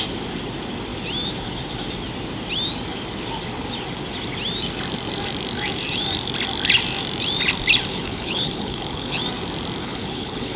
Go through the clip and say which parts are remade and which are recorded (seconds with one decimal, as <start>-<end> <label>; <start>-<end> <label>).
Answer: 0.0-7.9 recorded; 7.9-9.2 remade; 9.2-9.8 recorded; 9.8-10.6 remade